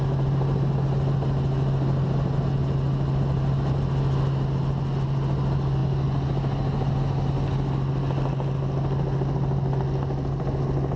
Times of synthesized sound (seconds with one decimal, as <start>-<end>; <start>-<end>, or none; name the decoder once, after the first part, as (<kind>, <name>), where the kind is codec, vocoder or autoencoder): none